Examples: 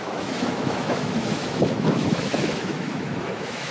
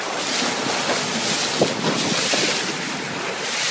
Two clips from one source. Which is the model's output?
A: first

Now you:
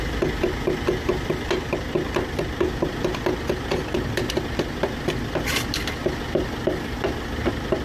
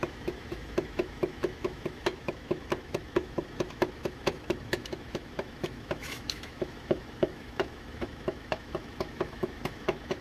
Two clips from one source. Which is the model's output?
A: second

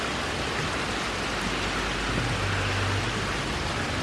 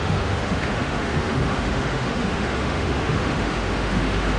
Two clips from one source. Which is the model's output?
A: second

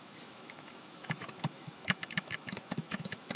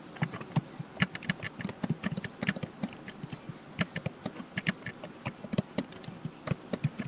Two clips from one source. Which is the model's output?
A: first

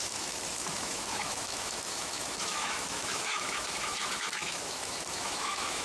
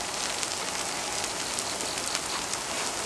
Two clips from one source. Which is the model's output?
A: first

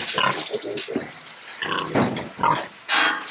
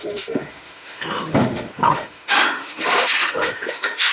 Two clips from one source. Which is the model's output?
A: second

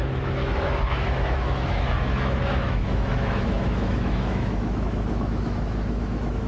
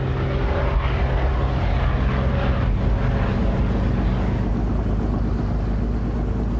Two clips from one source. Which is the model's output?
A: first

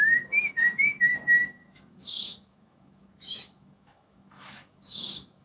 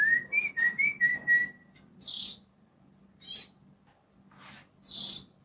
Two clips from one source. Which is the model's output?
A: first